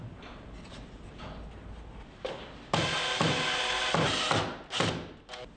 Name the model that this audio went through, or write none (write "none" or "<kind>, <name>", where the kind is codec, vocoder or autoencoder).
none